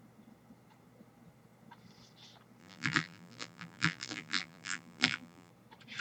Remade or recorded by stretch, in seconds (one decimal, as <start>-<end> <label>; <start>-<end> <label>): 0.0-2.6 recorded; 2.6-5.5 remade; 5.5-6.0 recorded

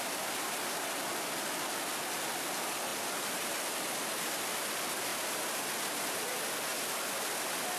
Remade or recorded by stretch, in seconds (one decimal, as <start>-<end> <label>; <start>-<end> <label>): 0.0-7.8 recorded

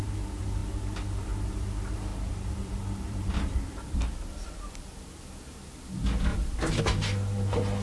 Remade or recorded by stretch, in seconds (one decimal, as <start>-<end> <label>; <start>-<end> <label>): 0.0-2.1 recorded; 2.1-5.2 remade; 5.2-6.3 recorded; 6.3-6.8 remade; 6.8-7.8 recorded

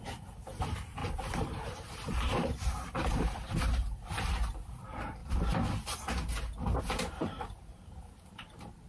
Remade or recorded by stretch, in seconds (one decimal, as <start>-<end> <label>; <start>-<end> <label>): 0.0-5.2 remade; 5.2-6.8 recorded; 6.8-8.9 remade